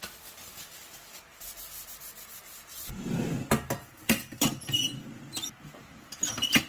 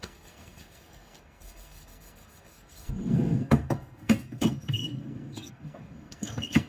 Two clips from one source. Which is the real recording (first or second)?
first